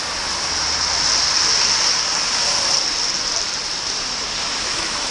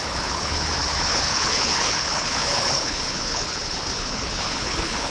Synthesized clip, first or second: second